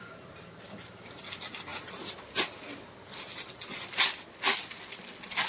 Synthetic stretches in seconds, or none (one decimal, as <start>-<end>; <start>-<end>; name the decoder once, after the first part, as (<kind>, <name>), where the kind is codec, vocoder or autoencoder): none